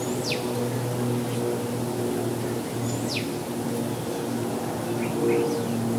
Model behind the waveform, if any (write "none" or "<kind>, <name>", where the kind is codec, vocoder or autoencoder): none